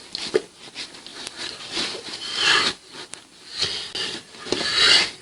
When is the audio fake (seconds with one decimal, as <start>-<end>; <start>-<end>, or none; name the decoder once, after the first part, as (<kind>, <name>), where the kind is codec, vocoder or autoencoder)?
1.1-2.7 (vocoder, BigVGAN v2)

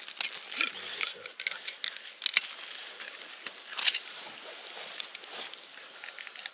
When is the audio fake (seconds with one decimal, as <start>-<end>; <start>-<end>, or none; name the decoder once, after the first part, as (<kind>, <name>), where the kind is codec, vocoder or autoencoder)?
2.8-4.3 (vocoder, BigVGAN v2)